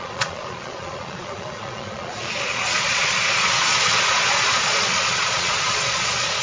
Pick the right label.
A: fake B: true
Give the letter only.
A